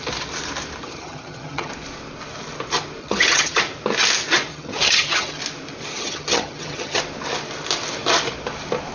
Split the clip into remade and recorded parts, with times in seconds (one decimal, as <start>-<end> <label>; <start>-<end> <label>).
0.0-0.8 recorded; 0.8-1.7 remade; 1.7-3.0 recorded; 3.0-3.6 remade; 3.6-4.5 recorded; 4.5-5.4 remade; 5.4-5.9 recorded; 5.9-7.0 remade; 7.0-8.9 recorded